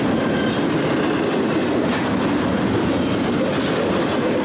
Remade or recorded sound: recorded